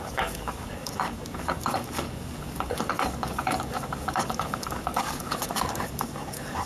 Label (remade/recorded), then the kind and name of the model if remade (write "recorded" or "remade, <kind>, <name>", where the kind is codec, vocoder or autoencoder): remade, codec, DAC